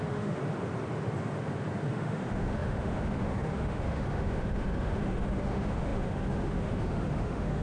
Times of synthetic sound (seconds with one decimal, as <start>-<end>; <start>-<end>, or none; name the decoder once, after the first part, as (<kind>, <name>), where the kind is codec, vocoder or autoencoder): 0.0-0.4 (autoencoder, DAC-VAE); 1.9-7.6